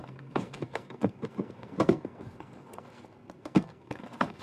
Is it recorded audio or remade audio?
remade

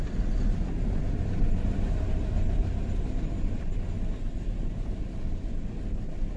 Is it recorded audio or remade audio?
recorded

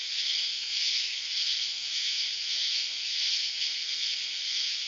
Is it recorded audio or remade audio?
remade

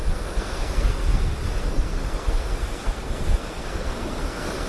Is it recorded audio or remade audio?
remade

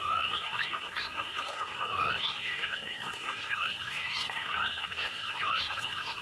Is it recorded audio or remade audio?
remade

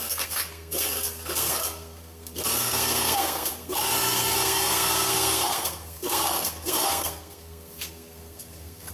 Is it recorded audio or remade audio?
remade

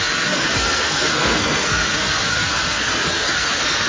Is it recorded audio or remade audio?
remade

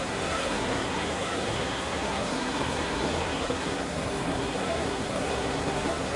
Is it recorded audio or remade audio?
remade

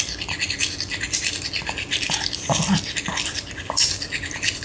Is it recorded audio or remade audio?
recorded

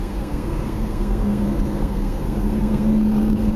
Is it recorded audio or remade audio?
remade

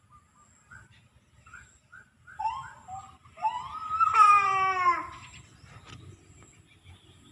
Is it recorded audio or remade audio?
recorded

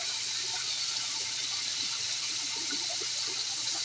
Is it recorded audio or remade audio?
recorded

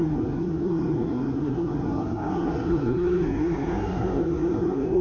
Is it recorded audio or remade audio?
remade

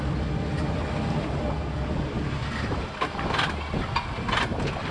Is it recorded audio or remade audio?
recorded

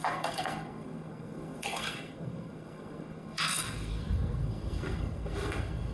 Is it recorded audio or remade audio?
remade